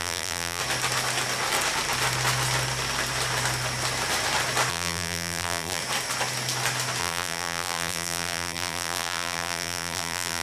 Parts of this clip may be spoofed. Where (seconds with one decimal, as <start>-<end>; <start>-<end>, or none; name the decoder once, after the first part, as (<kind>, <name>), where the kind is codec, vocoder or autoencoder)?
0.0-0.6 (vocoder, BigVGAN v2); 4.7-5.8; 7.0-10.4